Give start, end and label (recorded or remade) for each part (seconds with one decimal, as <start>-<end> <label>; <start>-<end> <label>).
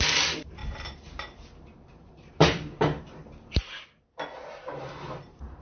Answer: 0.0-0.6 recorded; 0.6-4.0 remade; 4.0-5.6 recorded